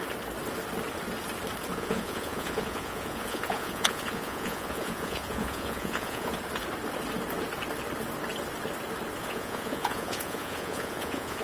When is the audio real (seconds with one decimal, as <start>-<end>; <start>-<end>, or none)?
0.0-1.7; 6.4-9.2